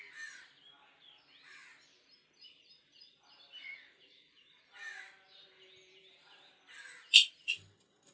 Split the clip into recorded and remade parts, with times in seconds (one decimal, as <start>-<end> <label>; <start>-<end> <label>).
0.0-2.2 recorded; 2.2-6.8 remade; 6.8-8.1 recorded